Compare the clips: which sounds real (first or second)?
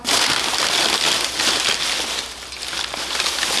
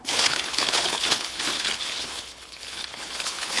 first